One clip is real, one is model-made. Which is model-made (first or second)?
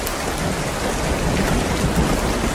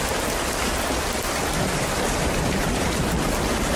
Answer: second